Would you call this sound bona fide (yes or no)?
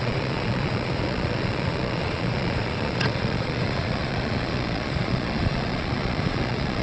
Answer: no